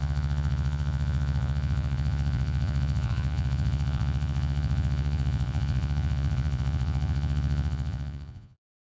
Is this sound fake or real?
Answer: fake